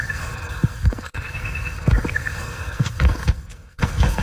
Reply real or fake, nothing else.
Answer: fake